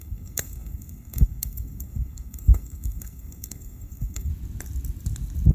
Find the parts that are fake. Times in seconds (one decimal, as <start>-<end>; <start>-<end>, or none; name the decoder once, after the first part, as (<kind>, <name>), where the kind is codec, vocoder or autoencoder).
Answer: 0.0-4.3 (codec, SNAC)